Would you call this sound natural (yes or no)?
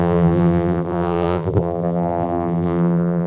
no